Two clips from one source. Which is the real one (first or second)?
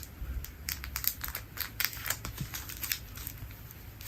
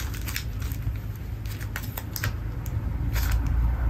second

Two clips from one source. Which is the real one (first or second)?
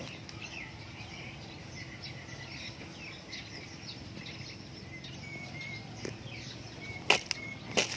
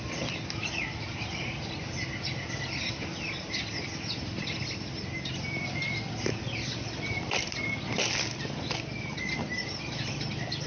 first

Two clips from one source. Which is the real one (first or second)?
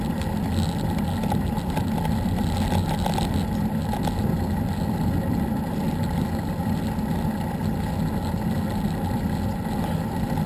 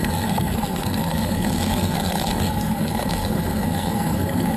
first